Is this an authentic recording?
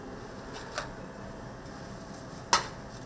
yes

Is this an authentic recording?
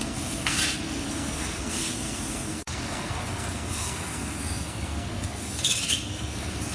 no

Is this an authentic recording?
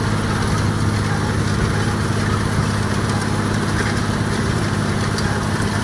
yes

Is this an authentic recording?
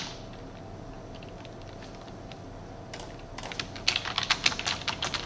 yes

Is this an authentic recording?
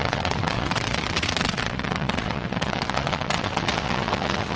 no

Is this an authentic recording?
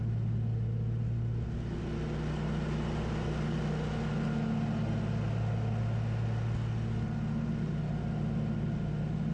yes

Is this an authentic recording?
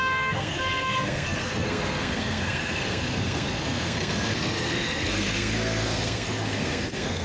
no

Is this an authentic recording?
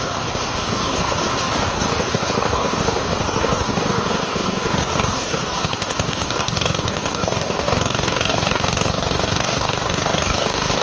no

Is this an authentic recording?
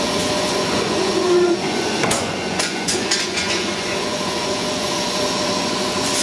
no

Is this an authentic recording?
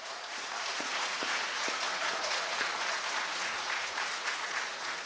no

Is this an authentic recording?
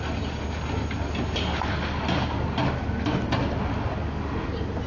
yes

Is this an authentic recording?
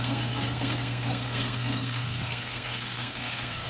no